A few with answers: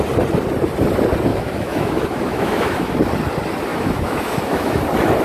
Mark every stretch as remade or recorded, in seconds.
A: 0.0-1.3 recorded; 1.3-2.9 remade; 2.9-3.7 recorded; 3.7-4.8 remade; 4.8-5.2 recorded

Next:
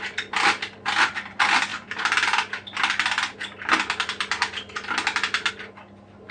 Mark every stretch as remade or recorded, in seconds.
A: 0.0-6.3 recorded

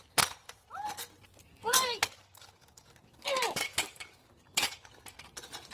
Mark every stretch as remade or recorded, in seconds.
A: 0.0-1.5 recorded; 1.5-4.9 remade; 4.9-5.7 recorded

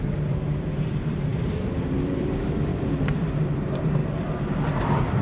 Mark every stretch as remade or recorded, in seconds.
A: 0.0-4.0 remade; 4.0-5.2 recorded

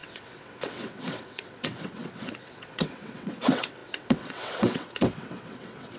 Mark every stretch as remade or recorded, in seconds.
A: 0.0-6.0 remade

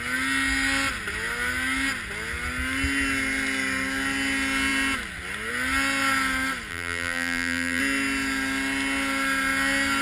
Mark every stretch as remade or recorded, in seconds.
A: 0.0-6.7 recorded; 6.7-7.8 remade; 7.8-10.0 recorded

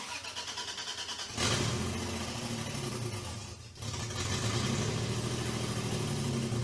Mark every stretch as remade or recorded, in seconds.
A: 0.0-6.6 recorded